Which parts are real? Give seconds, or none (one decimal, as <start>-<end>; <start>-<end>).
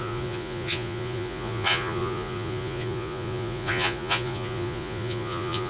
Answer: none